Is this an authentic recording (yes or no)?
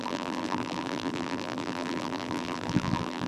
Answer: no